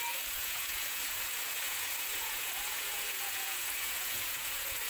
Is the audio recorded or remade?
remade